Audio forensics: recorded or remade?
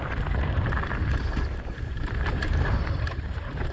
remade